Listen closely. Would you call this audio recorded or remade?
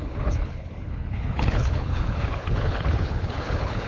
remade